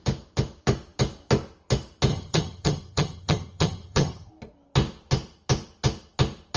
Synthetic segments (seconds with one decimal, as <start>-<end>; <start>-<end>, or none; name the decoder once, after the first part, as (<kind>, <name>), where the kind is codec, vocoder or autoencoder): 2.1-4.3 (vocoder, HiFi-GAN)